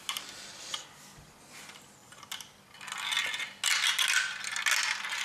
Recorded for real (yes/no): yes